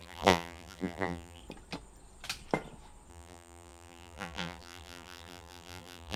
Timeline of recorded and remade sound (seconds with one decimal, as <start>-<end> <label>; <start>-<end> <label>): 0.0-1.4 remade; 1.4-3.1 recorded; 3.1-6.2 remade